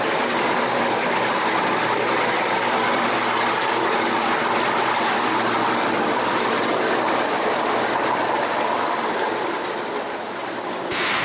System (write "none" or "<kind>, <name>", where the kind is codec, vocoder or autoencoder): none